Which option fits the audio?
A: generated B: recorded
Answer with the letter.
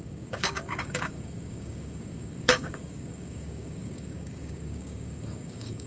A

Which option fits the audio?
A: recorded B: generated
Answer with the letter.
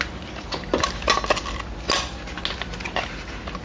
A